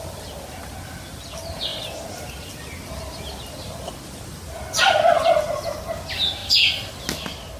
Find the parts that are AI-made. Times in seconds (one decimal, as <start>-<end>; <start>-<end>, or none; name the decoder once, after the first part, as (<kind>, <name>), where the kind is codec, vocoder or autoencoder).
none